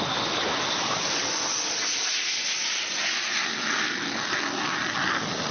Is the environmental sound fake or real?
real